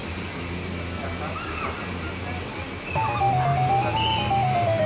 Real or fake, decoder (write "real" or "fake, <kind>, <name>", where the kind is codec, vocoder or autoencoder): real